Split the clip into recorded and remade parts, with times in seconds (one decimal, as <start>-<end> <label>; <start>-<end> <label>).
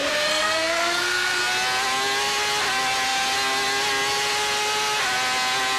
0.0-1.4 remade; 1.4-5.8 recorded